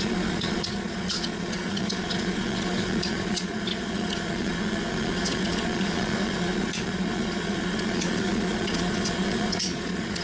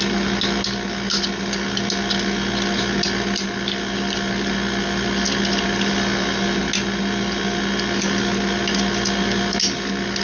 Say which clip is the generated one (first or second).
first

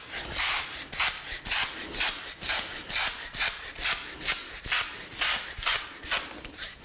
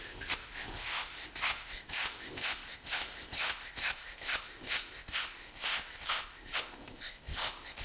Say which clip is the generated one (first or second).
second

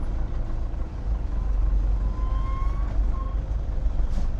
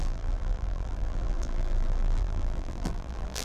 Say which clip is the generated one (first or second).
second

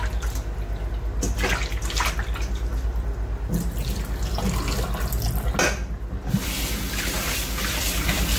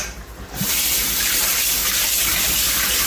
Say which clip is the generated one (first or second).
second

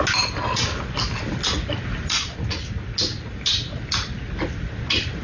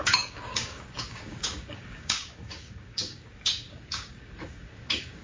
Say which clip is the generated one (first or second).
second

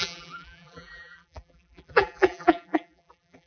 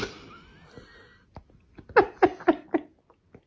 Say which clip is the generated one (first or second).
first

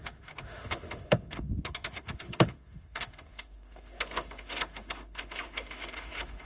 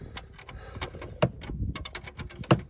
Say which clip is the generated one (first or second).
first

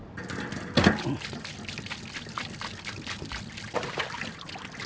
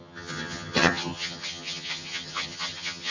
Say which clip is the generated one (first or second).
second